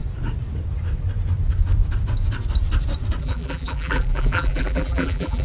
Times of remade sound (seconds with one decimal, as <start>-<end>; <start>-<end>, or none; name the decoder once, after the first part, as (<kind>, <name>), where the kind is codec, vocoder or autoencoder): 3.2-5.4 (vocoder, BigVGAN v2)